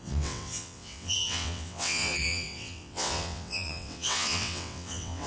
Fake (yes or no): yes